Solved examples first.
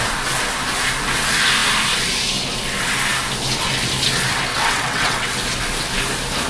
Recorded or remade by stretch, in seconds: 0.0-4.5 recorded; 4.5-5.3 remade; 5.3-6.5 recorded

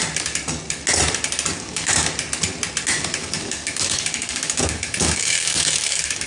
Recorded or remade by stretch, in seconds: 0.0-1.5 recorded; 1.5-2.1 remade; 2.1-3.2 recorded; 3.2-6.3 remade

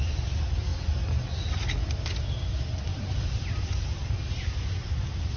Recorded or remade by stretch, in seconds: 0.0-5.4 recorded

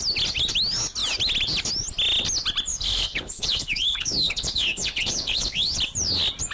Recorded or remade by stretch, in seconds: 0.0-2.7 recorded; 2.7-5.8 remade; 5.8-6.5 recorded

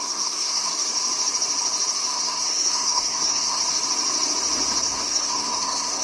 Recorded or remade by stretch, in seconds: 0.0-0.9 remade; 0.9-2.1 recorded; 2.1-3.6 remade; 3.6-4.8 recorded; 4.8-6.0 remade

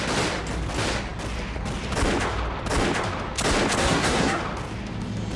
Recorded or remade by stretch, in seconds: 0.0-3.8 recorded; 3.8-4.4 remade; 4.4-5.4 recorded